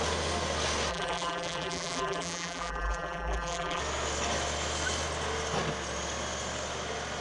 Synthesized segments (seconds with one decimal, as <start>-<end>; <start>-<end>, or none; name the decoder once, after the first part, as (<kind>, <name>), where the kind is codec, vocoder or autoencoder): 0.9-3.8 (vocoder, BigVGAN v2)